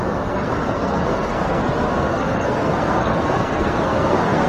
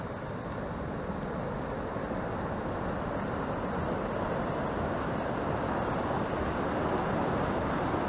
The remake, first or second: first